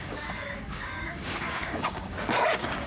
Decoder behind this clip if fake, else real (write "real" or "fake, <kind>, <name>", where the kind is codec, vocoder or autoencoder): fake, codec, DAC